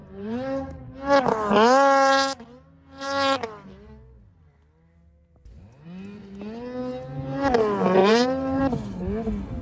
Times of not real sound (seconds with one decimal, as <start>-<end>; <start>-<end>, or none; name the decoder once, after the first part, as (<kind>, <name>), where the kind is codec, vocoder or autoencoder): 0.0-0.8 (vocoder, BigVGAN v2); 8.0-8.6